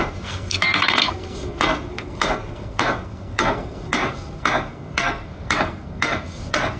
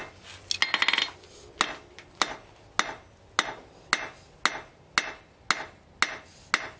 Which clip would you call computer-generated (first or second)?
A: first